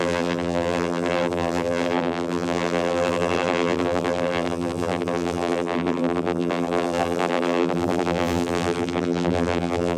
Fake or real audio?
fake